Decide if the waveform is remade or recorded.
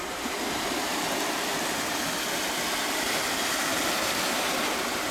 recorded